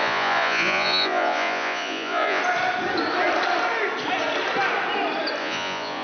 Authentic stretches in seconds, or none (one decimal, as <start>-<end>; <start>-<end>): 2.4-5.4